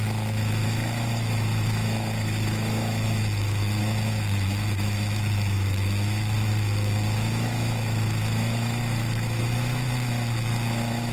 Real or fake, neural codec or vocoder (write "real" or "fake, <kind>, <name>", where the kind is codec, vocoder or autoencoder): fake, autoencoder, DAC-VAE